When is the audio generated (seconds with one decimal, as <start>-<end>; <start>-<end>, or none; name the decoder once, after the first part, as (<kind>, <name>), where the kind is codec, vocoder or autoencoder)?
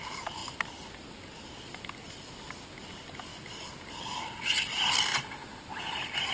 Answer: 0.4-1.8 (vocoder, BigVGAN v2)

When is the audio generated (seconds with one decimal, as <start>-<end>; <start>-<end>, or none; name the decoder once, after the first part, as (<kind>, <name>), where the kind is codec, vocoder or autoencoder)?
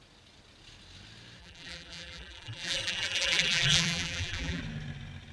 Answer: 1.4-4.6 (vocoder, BigVGAN v2)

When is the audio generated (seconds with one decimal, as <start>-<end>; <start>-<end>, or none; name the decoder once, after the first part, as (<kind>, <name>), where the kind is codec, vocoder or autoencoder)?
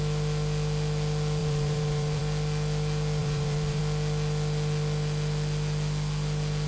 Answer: 1.4-2.2 (vocoder, BigVGAN v2); 3.2-3.8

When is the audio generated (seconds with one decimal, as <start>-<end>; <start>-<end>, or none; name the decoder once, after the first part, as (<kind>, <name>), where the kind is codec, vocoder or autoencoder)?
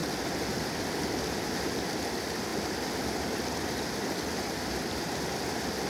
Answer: none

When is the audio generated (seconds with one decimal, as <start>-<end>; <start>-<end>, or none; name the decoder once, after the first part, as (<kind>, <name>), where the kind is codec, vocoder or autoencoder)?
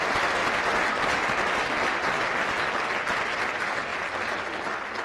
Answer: none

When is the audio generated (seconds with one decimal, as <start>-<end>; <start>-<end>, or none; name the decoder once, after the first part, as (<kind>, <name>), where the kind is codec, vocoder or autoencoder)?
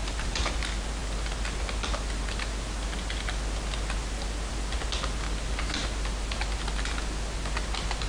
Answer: 0.0-0.6 (vocoder, BigVGAN v2)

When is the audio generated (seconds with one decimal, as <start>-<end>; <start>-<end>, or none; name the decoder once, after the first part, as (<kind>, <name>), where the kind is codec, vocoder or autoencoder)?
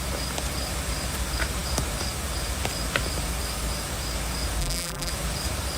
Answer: 4.6-5.1 (vocoder, BigVGAN v2)